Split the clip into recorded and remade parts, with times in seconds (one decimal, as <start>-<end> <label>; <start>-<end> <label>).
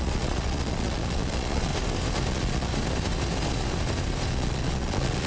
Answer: 0.0-1.7 remade; 1.7-2.3 recorded; 2.3-2.7 remade; 2.7-4.3 recorded; 4.3-5.3 remade